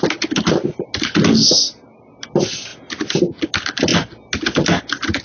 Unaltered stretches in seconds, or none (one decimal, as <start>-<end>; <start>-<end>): 0.0-5.2